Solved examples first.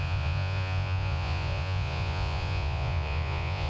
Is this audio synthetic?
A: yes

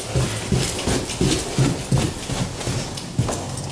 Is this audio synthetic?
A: no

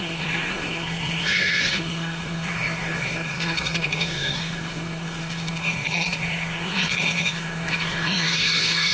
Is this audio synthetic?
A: yes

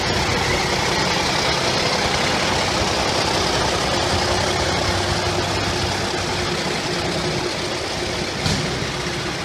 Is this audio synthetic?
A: no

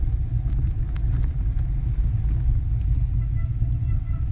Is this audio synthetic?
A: no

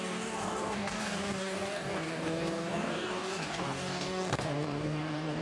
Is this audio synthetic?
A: yes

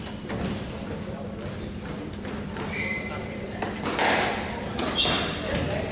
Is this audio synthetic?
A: no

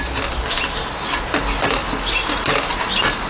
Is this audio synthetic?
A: no